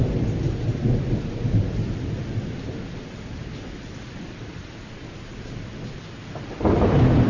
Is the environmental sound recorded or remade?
recorded